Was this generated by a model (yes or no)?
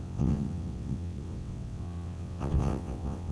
yes